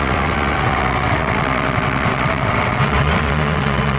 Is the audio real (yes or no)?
no